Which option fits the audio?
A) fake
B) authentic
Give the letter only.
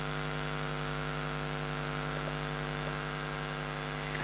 B